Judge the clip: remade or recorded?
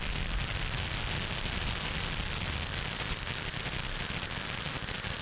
recorded